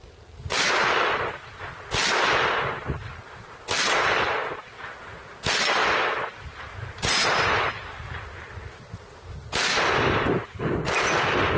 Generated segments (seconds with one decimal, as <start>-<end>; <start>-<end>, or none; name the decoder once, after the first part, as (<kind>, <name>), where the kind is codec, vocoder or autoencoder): 5.8-7.7 (vocoder, BigVGAN v2)